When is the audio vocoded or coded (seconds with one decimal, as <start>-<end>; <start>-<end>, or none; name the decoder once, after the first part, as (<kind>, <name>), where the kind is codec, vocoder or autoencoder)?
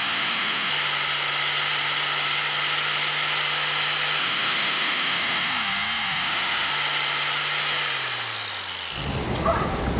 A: 0.0-0.7 (autoencoder, DAC-VAE); 4.2-6.7